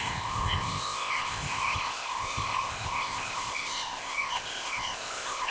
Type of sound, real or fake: fake